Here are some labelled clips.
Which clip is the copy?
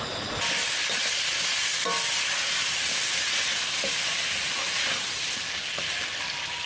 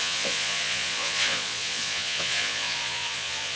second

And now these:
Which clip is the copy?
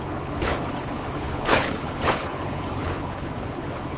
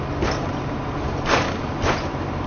first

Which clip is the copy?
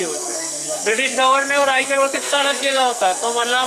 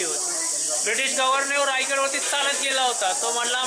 first